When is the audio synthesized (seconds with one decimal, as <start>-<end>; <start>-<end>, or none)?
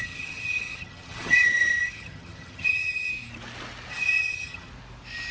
0.0-3.1; 3.9-4.7